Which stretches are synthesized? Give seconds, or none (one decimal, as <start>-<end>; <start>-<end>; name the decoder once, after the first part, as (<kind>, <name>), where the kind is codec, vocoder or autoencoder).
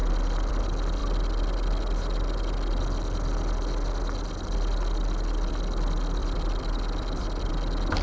6.2-7.5 (vocoder, BigVGAN v2)